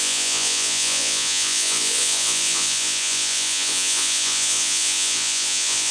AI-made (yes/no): yes